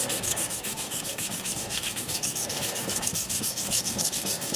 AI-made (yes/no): yes